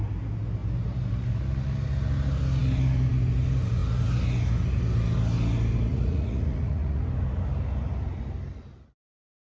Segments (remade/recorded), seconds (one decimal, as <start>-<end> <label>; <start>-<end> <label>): 0.0-5.9 recorded; 5.9-7.0 remade; 7.0-9.5 recorded